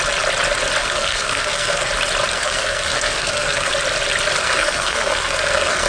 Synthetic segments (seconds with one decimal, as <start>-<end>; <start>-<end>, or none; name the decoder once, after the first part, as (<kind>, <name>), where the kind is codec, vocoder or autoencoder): 0.8-1.9 (codec, SNAC); 2.3-3.7; 4.4-5.9